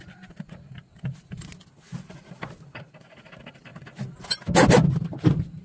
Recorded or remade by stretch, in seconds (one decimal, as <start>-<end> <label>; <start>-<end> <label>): 0.0-5.6 recorded